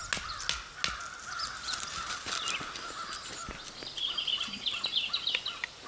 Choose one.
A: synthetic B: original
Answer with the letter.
B